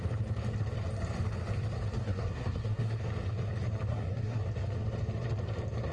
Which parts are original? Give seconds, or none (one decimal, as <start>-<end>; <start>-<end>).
0.0-2.0; 3.0-3.9; 4.4-5.9